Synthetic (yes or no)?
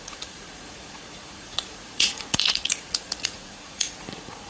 yes